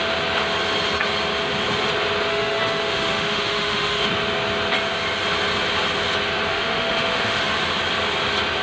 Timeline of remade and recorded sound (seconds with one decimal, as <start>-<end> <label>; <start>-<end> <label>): 0.0-2.3 recorded; 2.3-4.1 remade; 4.1-6.5 recorded; 6.5-7.4 remade; 7.4-8.6 recorded

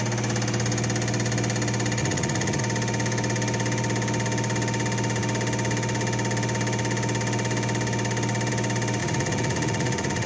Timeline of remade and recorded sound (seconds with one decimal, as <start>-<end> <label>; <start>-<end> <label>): 0.0-2.0 recorded; 2.0-2.6 remade; 2.6-9.0 recorded; 9.0-10.3 remade

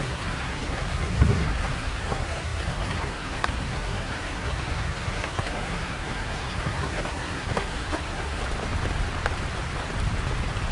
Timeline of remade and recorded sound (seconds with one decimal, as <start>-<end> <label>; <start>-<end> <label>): 0.0-8.4 remade; 8.4-10.7 recorded

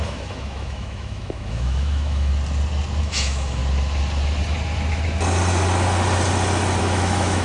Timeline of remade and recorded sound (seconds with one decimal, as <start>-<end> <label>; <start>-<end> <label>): 0.0-2.3 remade; 2.3-3.0 recorded; 3.0-3.6 remade; 3.6-6.8 recorded; 6.8-7.4 remade

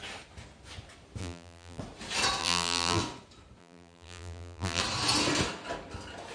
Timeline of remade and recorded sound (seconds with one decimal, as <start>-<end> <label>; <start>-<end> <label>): 0.0-1.2 recorded; 1.2-1.8 remade; 1.8-2.4 recorded; 2.4-3.0 remade; 3.0-3.6 recorded; 3.6-4.8 remade; 4.8-6.3 recorded

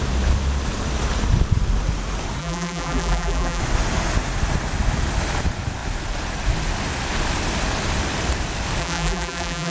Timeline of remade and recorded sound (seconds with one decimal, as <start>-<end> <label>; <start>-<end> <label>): 0.0-2.4 recorded; 2.4-3.6 remade; 3.6-8.8 recorded; 8.8-9.7 remade

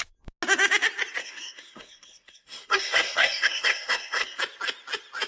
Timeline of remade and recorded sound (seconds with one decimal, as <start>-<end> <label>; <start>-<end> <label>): 0.0-1.2 recorded; 1.2-4.4 remade; 4.4-5.3 recorded